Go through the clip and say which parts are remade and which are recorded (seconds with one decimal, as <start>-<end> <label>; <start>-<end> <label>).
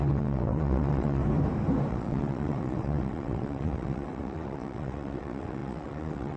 0.0-1.2 remade; 1.2-1.9 recorded; 1.9-6.4 remade